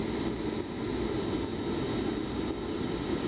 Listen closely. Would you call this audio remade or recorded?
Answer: recorded